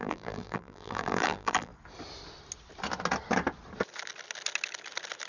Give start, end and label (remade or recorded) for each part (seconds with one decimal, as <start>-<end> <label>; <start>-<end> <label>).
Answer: 0.0-1.7 remade; 1.7-5.3 recorded